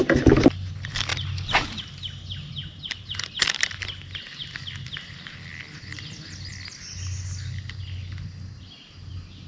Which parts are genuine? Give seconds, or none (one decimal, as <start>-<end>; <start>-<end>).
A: 0.0-9.5